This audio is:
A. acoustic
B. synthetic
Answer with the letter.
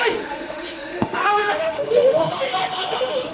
B